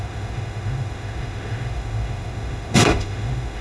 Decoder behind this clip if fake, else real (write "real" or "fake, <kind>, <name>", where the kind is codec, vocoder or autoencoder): fake, autoencoder, DAC-VAE